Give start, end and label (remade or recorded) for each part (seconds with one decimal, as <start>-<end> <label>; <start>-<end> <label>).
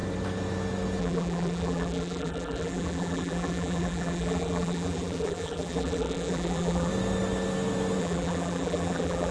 0.0-1.0 recorded; 1.0-6.9 remade; 6.9-8.0 recorded; 8.0-9.3 remade